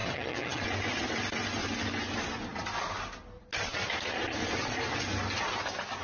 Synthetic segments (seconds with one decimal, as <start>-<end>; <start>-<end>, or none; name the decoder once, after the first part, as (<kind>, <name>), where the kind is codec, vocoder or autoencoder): 0.0-0.6 (vocoder, HiFi-GAN)